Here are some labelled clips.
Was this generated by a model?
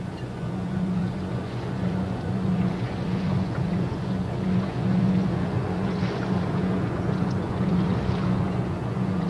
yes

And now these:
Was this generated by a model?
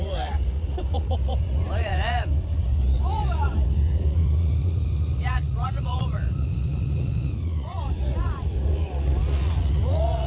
yes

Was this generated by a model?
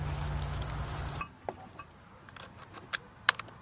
no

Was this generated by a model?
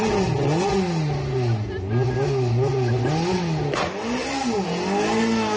no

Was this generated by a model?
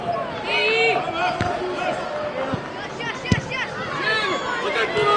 no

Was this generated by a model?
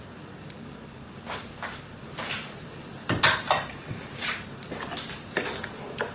no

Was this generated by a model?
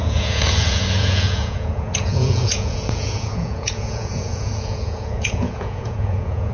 yes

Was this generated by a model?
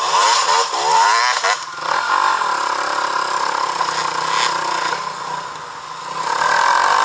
no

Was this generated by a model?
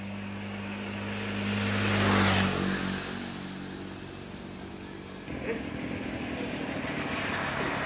no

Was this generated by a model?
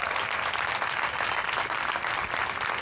no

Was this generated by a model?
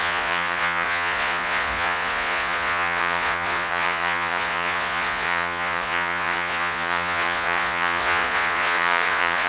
yes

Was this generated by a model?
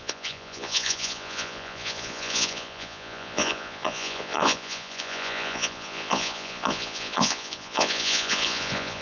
yes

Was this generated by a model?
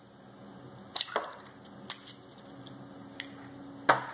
no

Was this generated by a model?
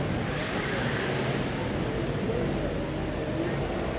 no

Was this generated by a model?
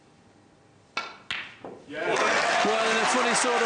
no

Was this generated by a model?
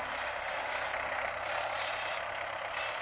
no